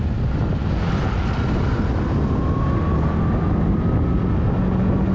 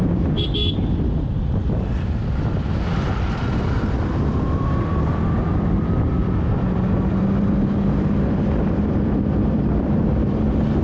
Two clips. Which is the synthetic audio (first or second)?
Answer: second